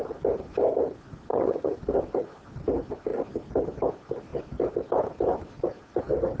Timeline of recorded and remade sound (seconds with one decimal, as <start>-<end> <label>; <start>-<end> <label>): 0.0-1.3 recorded; 1.3-1.8 remade; 1.8-6.4 recorded